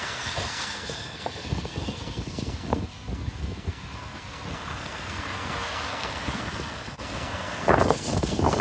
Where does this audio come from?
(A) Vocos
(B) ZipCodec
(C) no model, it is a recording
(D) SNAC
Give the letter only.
D